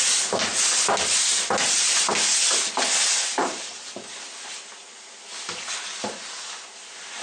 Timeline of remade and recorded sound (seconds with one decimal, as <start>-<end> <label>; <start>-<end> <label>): 0.0-7.2 recorded